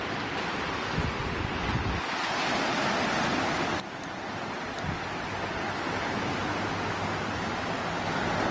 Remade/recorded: recorded